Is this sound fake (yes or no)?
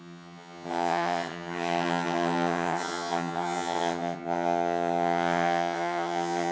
yes